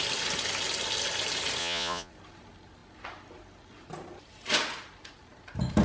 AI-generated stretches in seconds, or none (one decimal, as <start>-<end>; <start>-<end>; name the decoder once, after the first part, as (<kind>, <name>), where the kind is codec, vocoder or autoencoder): 1.6-2.1 (vocoder, Vocos)